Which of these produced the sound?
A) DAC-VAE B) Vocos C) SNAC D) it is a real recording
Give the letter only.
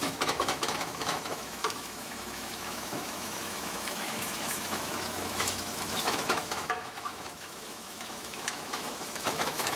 A